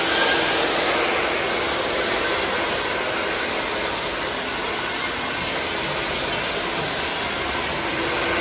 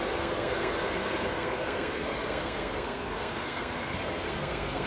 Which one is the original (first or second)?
first